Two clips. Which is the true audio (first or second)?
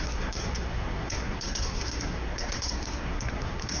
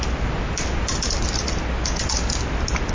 second